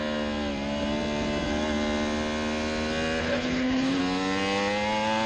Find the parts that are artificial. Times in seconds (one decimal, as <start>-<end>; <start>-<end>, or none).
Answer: 3.2-4.0